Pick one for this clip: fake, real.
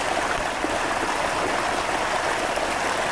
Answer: real